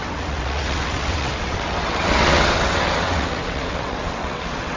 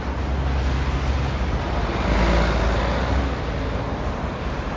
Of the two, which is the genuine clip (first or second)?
second